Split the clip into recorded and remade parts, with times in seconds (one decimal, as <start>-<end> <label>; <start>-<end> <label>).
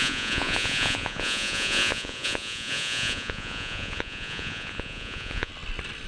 0.0-5.5 remade; 5.5-6.1 recorded